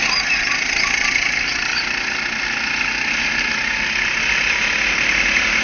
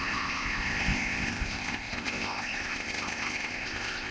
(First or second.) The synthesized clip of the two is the second